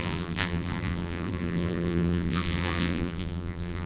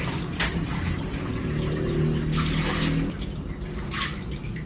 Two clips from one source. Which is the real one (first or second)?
second